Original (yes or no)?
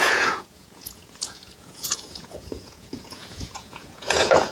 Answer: no